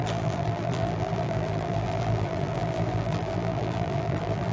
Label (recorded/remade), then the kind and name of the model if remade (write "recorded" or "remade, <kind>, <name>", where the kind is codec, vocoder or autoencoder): remade, vocoder, BigVGAN v2